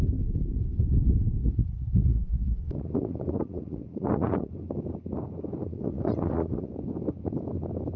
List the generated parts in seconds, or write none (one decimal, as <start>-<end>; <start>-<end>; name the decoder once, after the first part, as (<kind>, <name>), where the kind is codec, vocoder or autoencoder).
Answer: 1.4-4.5 (vocoder, Vocos); 5.6-6.7

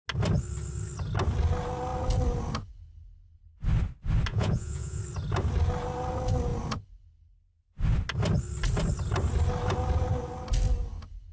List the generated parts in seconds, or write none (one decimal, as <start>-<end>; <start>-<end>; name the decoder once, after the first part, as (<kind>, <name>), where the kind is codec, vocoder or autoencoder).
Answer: 4.3-5.0 (vocoder, Vocos)

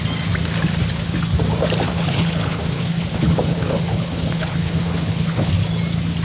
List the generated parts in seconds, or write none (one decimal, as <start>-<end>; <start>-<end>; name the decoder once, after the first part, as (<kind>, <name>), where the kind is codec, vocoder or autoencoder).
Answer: 1.9-5.5 (codec, HILCodec)

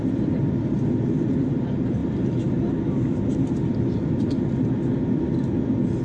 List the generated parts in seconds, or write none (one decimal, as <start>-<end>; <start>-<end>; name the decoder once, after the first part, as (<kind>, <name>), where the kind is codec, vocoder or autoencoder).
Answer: none

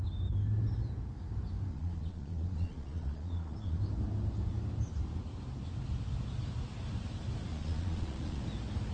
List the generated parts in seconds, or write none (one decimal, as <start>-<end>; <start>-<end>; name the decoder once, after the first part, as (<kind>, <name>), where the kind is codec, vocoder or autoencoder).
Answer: 1.7-3.8 (vocoder, Vocos); 7.5-8.4

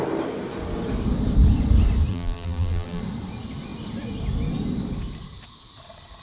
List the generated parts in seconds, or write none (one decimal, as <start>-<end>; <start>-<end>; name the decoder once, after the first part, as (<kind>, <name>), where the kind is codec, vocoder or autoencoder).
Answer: 2.1-3.0 (vocoder, BigVGAN v2)

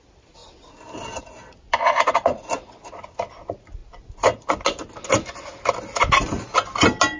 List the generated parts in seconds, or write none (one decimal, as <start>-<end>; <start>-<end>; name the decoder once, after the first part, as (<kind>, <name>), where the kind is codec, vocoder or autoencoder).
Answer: none

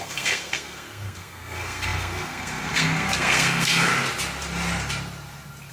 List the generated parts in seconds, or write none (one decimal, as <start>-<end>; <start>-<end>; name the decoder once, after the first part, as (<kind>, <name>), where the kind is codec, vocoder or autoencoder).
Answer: 0.0-3.9 (codec, SNAC)